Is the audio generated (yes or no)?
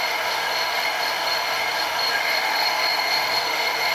yes